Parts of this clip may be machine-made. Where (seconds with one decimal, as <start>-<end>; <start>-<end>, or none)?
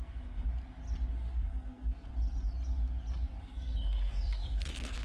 0.0-0.5; 1.1-2.1; 3.4-5.0